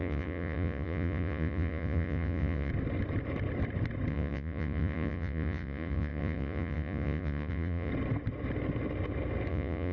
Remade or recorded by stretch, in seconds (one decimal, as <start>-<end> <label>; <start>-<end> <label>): 0.0-2.7 remade; 2.7-4.1 recorded; 4.1-7.9 remade; 7.9-9.5 recorded; 9.5-9.9 remade